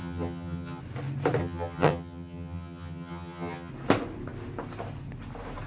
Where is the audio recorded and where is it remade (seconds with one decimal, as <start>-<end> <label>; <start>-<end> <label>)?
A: 0.0-0.8 remade; 0.8-1.4 recorded; 1.4-3.7 remade; 3.7-5.7 recorded

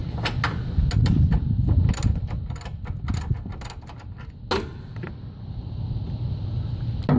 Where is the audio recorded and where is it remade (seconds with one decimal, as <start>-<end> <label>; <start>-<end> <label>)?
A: 0.0-7.2 recorded

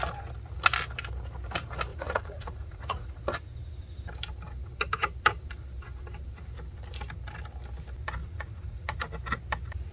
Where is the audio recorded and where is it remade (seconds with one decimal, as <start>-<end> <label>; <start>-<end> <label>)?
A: 0.0-1.9 recorded; 1.9-3.2 remade; 3.2-8.2 recorded; 8.2-9.0 remade; 9.0-9.9 recorded

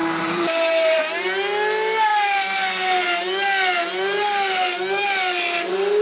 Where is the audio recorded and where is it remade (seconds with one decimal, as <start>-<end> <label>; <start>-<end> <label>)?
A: 0.0-1.0 remade; 1.0-6.0 recorded

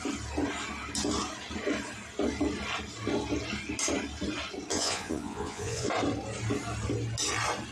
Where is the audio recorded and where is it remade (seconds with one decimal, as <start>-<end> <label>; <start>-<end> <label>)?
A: 0.0-4.7 recorded; 4.7-5.9 remade; 5.9-7.7 recorded

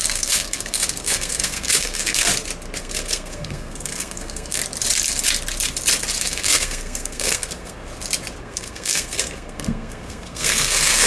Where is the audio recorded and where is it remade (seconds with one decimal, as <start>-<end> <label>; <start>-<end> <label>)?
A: 0.0-2.3 remade; 2.3-2.8 recorded; 2.8-4.6 remade; 4.6-6.2 recorded; 6.2-7.8 remade; 7.8-8.4 recorded; 8.4-11.1 remade

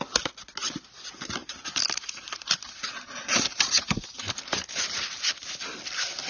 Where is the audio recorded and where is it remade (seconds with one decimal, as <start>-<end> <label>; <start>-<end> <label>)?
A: 0.0-1.4 recorded; 1.4-5.2 remade; 5.2-6.3 recorded

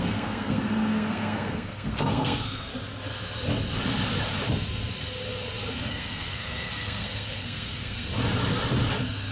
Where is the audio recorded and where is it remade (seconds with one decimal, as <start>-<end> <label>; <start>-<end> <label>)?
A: 0.0-2.7 remade; 2.7-5.7 recorded; 5.7-8.1 remade; 8.1-9.3 recorded